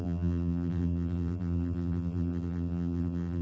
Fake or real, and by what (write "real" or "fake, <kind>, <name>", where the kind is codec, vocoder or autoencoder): fake, vocoder, BigVGAN v2